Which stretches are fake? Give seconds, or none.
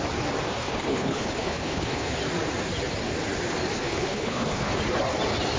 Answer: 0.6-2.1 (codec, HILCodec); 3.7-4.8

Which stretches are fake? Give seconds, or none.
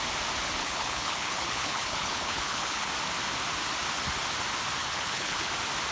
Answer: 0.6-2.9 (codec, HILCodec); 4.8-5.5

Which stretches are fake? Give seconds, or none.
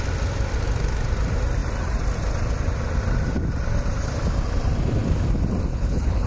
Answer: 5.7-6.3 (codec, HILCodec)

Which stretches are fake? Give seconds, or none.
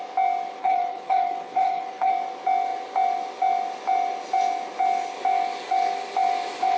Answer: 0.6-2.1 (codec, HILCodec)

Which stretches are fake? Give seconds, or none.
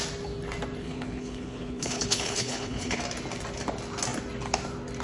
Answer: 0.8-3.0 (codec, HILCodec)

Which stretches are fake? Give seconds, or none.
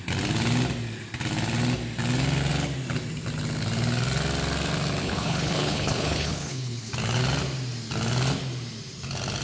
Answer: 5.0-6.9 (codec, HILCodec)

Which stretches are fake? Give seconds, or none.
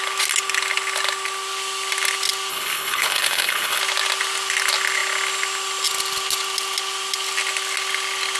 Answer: 2.5-3.8 (codec, HILCodec)